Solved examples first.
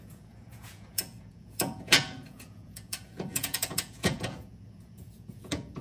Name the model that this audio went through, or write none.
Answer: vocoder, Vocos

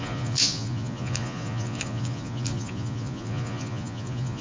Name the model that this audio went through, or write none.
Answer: vocoder, Vocos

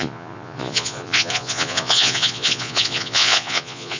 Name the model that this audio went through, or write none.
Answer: vocoder, Vocos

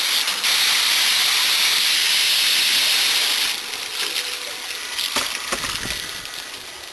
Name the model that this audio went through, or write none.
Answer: none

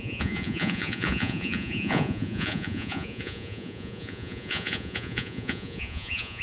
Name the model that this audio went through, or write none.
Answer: vocoder, Vocos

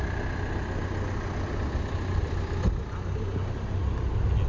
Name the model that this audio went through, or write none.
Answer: none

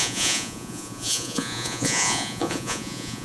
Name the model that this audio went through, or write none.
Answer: vocoder, Vocos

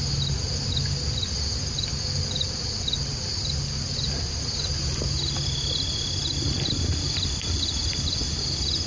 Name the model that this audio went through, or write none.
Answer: none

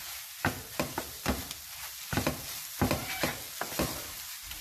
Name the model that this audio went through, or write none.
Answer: none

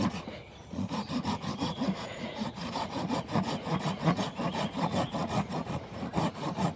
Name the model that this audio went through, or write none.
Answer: vocoder, Vocos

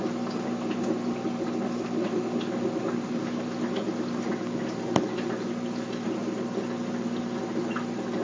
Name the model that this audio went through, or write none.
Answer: none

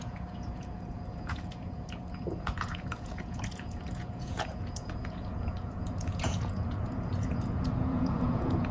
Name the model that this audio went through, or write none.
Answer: vocoder, Vocos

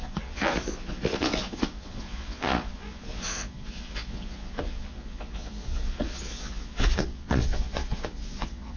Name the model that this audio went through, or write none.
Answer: vocoder, Vocos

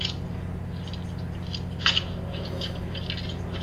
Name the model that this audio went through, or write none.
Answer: none